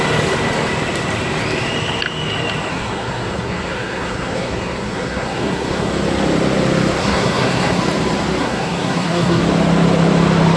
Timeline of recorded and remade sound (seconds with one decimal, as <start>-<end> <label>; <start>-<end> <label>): 0.0-2.7 recorded; 2.7-5.9 remade; 5.9-7.0 recorded; 7.0-7.8 remade; 7.8-8.4 recorded; 8.4-9.4 remade; 9.4-10.6 recorded